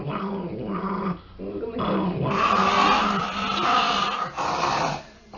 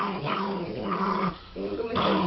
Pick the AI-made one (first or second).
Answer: second